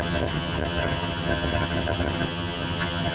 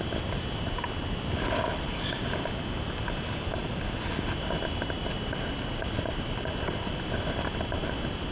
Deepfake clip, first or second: first